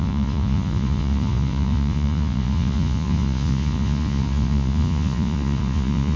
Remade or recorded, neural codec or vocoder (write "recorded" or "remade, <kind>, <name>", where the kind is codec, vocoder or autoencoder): remade, vocoder, Vocos